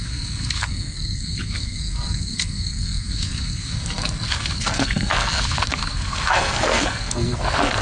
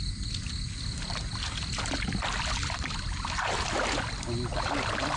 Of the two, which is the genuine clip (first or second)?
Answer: second